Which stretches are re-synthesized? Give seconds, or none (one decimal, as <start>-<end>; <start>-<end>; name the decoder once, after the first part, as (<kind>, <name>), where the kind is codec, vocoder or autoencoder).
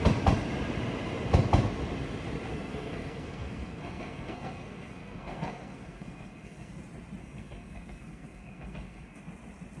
2.5-6.7 (codec, SNAC); 7.2-9.2